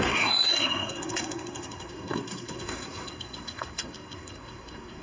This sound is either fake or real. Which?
fake